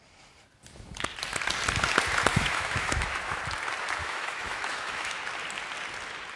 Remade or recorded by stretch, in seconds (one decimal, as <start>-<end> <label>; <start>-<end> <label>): 0.0-2.3 recorded; 2.3-3.4 remade; 3.4-4.0 recorded; 4.0-5.2 remade; 5.2-6.4 recorded